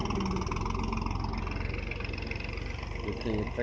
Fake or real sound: real